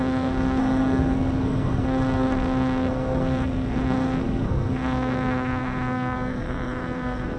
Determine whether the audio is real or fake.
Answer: fake